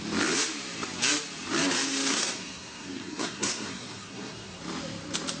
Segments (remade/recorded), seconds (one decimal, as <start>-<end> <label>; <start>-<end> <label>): 0.0-2.1 recorded; 2.1-4.6 remade; 4.6-5.4 recorded